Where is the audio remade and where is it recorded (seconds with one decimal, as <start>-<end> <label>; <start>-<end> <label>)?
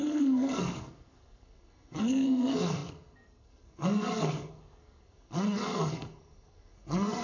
0.0-7.2 remade